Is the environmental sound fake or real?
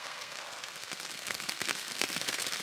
fake